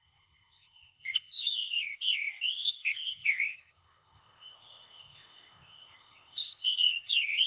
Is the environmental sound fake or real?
fake